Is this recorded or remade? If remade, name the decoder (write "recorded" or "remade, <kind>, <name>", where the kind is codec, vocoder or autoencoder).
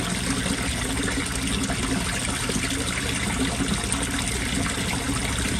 recorded